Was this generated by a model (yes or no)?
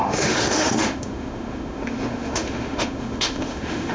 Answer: yes